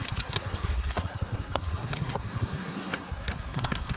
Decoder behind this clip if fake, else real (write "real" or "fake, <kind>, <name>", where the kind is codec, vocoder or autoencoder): fake, codec, SNAC